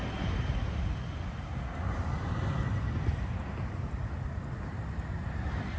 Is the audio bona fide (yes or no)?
yes